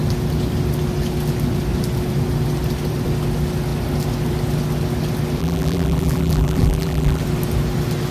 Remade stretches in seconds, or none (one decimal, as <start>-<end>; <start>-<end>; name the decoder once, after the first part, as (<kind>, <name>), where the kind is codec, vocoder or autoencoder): 5.4-7.2 (vocoder, BigVGAN v2)